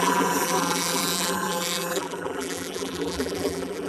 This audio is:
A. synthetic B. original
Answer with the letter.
A